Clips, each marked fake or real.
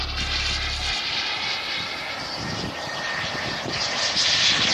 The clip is real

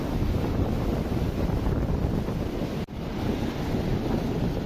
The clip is real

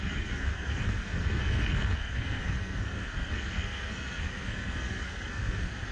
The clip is fake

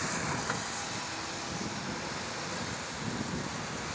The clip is real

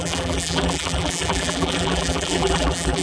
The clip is fake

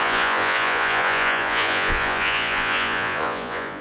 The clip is fake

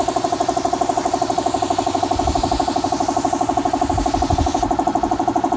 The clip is real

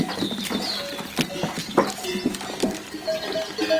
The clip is real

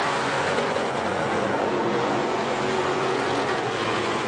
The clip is fake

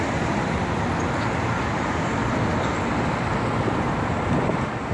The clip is real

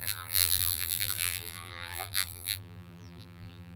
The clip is fake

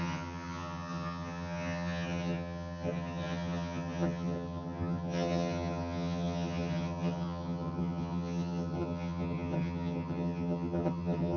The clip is fake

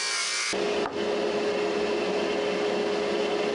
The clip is real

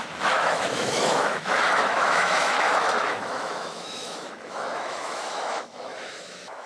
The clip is fake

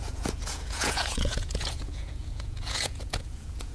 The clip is fake